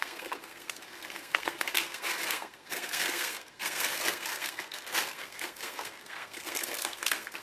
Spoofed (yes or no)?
yes